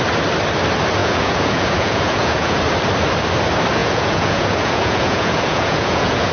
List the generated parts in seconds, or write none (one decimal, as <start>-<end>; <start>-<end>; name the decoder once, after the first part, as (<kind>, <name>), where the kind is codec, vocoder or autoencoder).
1.0-2.6 (vocoder, Vocos); 3.8-6.3